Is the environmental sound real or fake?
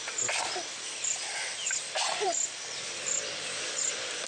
fake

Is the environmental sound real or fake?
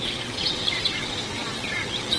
fake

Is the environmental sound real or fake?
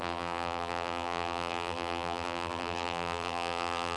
fake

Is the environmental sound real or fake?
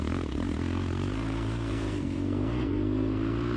fake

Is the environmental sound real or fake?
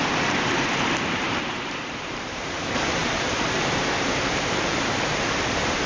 fake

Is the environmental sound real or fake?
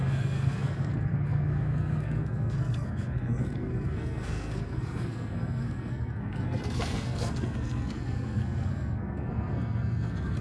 fake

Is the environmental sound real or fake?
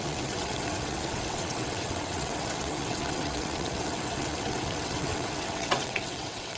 fake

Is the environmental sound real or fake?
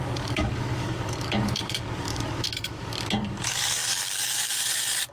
fake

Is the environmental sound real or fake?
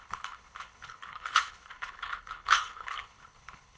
fake